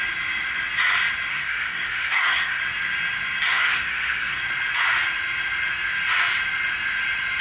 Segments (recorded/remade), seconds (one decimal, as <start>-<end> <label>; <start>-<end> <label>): 0.0-1.3 recorded; 1.3-2.6 remade; 2.6-3.5 recorded; 3.5-4.4 remade; 4.4-7.4 recorded